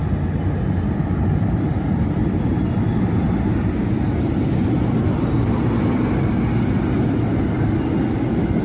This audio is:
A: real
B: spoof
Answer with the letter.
A